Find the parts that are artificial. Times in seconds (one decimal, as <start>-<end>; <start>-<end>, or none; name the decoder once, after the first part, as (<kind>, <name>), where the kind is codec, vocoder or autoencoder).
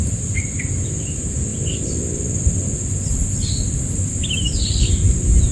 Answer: 0.0-0.6 (vocoder, BigVGAN v2)